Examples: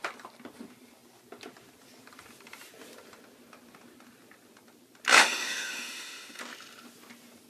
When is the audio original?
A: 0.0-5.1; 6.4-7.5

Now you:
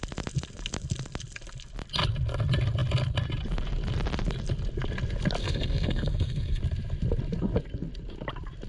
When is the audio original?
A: 0.0-5.4; 6.6-8.7

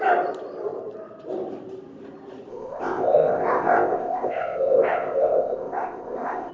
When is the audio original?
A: 0.0-2.5